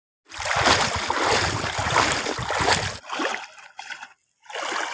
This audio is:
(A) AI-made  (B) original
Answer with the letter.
B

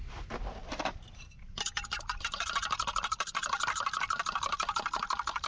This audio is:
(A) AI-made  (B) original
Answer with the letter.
B